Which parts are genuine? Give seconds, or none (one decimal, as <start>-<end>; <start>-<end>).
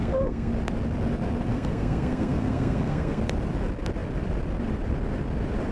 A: 0.5-1.5; 3.2-5.7